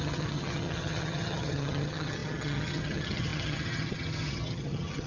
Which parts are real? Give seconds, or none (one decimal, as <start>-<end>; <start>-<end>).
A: none